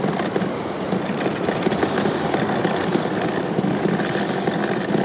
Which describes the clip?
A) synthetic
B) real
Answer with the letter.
B